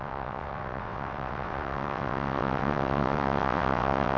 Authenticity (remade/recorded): remade